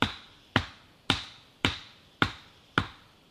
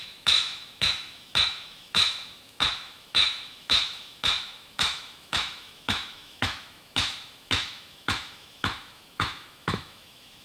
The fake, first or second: second